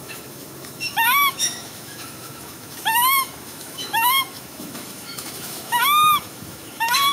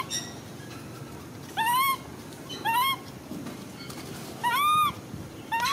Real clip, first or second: second